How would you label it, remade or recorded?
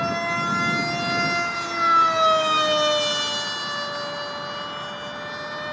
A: recorded